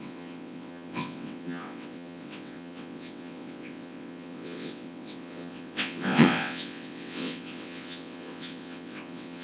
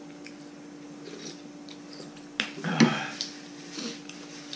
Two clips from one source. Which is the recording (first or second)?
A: second